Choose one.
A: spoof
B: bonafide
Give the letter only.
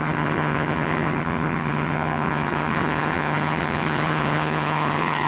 A